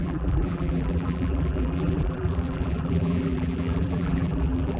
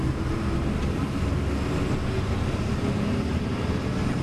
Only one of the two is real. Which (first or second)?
second